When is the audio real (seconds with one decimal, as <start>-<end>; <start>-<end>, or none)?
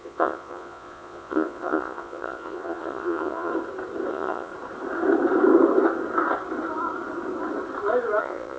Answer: 3.5-4.1; 4.5-8.2